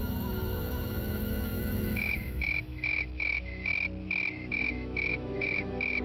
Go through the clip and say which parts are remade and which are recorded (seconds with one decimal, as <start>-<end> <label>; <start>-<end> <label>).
0.0-3.7 remade; 3.7-4.5 recorded; 4.5-6.0 remade